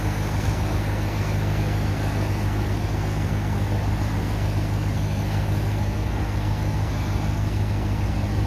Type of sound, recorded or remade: remade